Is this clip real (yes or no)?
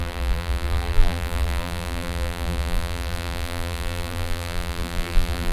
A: no